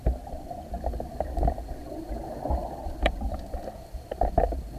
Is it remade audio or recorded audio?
recorded